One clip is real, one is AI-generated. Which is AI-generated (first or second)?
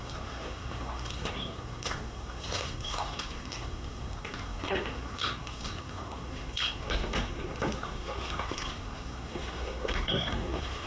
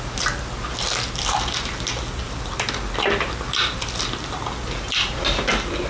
first